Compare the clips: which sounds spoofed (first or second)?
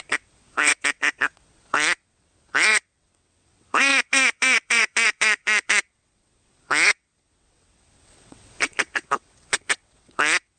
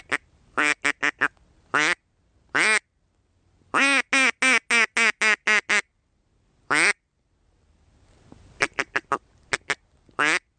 first